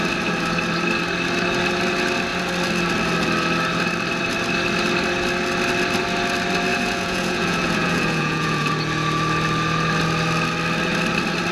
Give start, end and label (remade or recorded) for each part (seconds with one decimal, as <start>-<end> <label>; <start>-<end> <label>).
0.0-6.7 recorded; 6.7-8.7 remade; 8.7-11.5 recorded